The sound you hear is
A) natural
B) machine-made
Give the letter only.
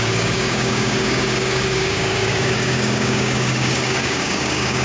B